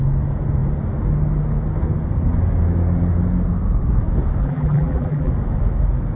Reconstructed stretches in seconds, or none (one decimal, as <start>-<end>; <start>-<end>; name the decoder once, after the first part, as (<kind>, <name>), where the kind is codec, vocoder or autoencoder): 4.4-5.3 (vocoder, BigVGAN v2)